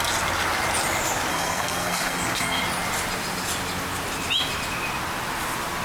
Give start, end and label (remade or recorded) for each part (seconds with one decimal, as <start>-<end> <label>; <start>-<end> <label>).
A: 0.0-1.3 recorded; 1.3-2.6 remade; 2.6-5.8 recorded